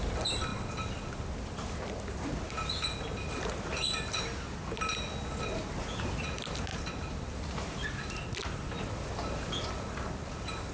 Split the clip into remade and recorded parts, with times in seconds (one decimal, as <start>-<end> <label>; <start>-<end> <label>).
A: 0.0-10.7 recorded